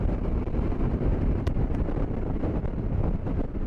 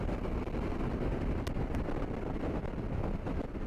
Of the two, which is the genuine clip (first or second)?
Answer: second